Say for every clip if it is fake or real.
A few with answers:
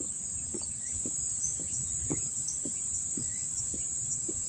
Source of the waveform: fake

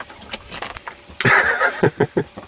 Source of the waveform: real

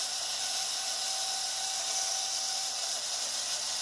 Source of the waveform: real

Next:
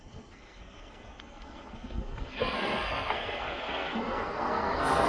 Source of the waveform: fake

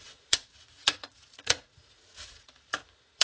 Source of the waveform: fake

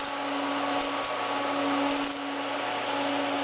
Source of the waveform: real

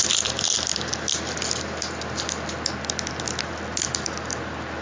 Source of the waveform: real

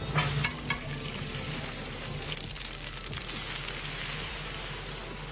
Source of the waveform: real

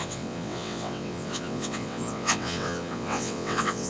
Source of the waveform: fake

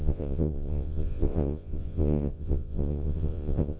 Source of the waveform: fake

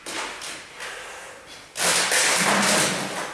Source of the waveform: real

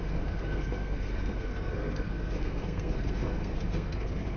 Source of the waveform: fake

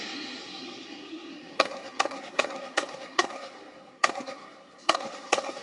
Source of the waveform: fake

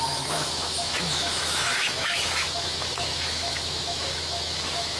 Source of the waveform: fake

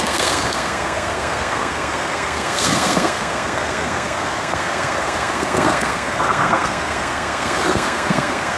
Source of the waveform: fake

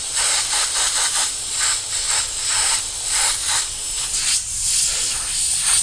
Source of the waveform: real